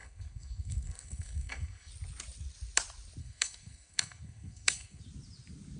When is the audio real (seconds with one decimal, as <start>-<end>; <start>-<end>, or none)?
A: 1.9-3.2; 5.0-5.8